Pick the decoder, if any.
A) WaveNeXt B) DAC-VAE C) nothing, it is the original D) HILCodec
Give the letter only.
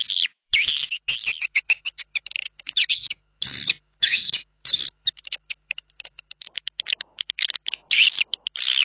B